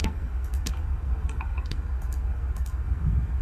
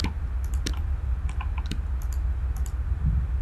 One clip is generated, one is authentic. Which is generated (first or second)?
first